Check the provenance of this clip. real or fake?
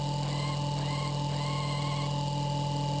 real